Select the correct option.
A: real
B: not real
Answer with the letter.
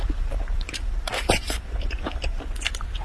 B